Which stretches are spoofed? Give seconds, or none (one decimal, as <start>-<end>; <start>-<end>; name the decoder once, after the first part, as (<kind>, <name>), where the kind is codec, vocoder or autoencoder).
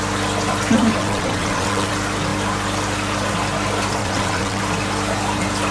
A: 1.0-1.9 (vocoder, WaveNeXt); 4.0-4.6